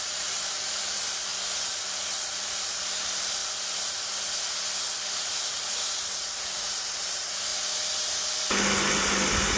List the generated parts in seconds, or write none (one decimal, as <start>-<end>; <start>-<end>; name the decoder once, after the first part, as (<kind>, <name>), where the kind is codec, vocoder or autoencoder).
0.0-1.3 (vocoder, BigVGAN v2); 2.3-3.4; 5.5-7.5; 9.0-9.6